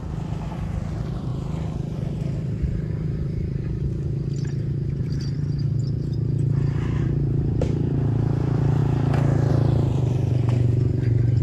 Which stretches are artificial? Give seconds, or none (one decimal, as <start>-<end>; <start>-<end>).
0.0-1.3; 5.0-5.8; 7.0-8.8; 9.5-11.4